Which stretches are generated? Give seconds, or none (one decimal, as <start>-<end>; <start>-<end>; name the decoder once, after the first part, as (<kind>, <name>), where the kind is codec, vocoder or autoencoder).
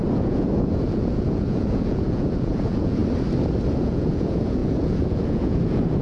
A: 0.0-3.0 (vocoder, Vocos); 3.8-6.0